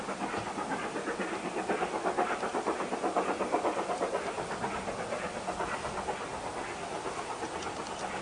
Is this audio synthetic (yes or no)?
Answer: no